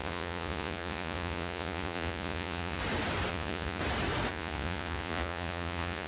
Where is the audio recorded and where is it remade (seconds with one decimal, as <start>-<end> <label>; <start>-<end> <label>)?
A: 0.0-2.8 remade; 2.8-3.3 recorded; 3.3-3.8 remade; 3.8-4.3 recorded; 4.3-6.1 remade